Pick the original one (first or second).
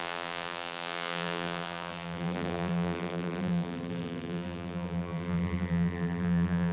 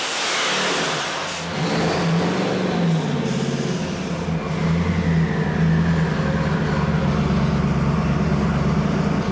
second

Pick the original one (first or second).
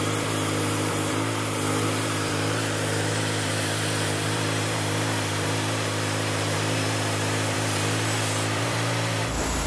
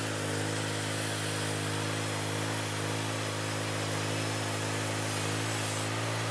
second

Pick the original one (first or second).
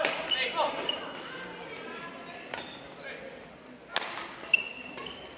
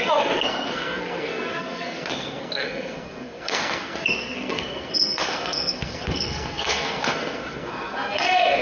first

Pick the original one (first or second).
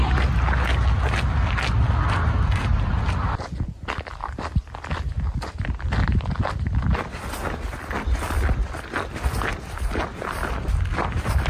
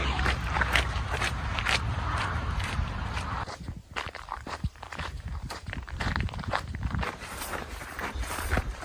first